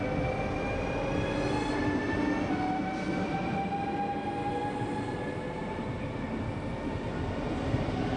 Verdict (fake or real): real